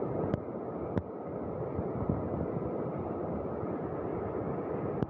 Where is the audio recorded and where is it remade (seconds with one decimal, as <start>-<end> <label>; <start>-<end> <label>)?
0.0-5.1 recorded